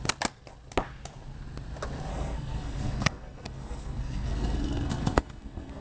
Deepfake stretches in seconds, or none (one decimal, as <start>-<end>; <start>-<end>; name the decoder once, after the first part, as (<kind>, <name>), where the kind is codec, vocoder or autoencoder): 2.1-5.8 (codec, SNAC)